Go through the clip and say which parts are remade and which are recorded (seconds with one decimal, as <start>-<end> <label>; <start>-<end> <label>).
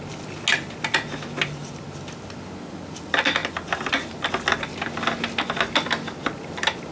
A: 0.0-6.9 recorded